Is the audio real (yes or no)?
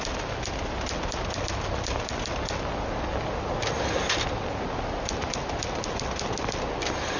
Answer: yes